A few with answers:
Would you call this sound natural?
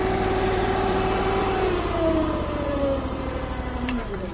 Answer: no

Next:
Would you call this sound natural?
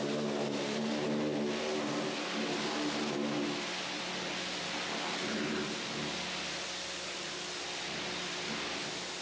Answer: yes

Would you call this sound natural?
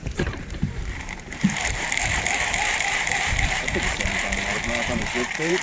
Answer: no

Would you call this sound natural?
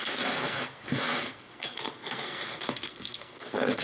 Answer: no